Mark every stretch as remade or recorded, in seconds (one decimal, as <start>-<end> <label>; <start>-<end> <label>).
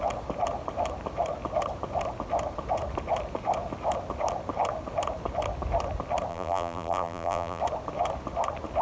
0.0-6.3 recorded; 6.3-7.6 remade; 7.6-8.8 recorded